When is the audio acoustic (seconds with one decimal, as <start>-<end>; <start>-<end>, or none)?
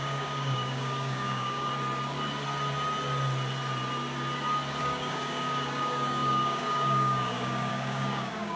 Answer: 1.7-4.8